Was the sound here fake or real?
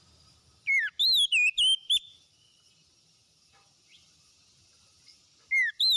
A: real